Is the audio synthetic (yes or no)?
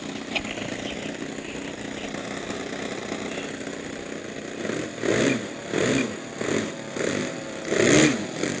no